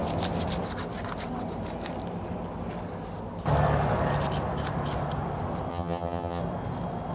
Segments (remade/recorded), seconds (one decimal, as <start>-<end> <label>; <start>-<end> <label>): 0.0-5.7 recorded; 5.7-6.4 remade; 6.4-7.1 recorded